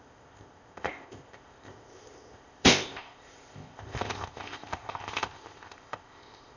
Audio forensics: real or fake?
fake